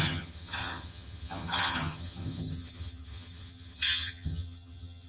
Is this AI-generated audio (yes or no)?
yes